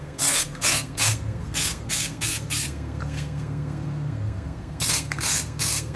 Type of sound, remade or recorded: remade